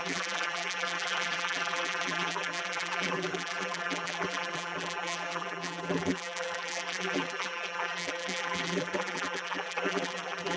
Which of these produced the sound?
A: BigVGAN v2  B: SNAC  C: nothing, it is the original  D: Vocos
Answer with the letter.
A